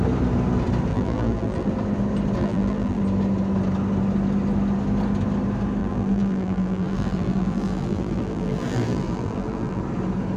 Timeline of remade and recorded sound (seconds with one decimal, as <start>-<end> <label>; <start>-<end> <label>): 0.0-0.9 recorded; 0.9-1.7 remade; 1.7-2.4 recorded; 2.4-3.0 remade; 3.0-5.8 recorded; 5.8-9.8 remade; 9.8-10.4 recorded